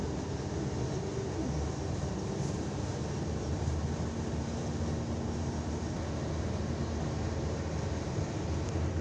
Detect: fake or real real